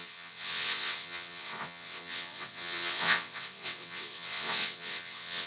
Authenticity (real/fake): fake